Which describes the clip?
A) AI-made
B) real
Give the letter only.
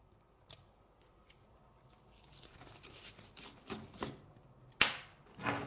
B